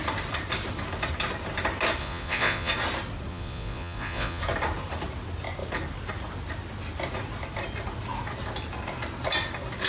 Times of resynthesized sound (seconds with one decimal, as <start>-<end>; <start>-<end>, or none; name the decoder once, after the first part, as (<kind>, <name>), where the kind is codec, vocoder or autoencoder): 2.0-2.7 (vocoder, Vocos); 3.3-4.4